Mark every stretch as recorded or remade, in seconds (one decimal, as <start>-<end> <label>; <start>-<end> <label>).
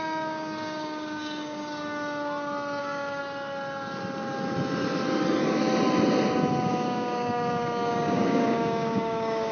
0.0-1.6 remade; 1.6-2.8 recorded; 2.8-3.2 remade; 3.2-6.7 recorded; 6.7-9.5 remade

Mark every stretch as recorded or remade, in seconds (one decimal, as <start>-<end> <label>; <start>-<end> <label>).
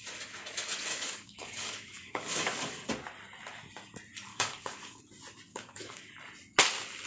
0.0-0.9 recorded; 0.9-2.9 remade; 2.9-4.3 recorded; 4.3-5.0 remade; 5.0-5.5 recorded; 5.5-6.1 remade; 6.1-7.1 recorded